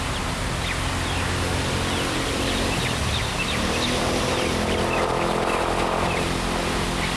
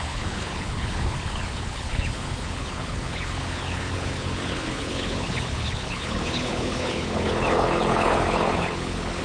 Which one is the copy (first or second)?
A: second